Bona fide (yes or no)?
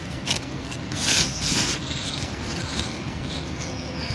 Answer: no